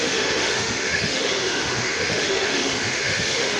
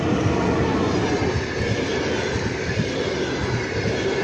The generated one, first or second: first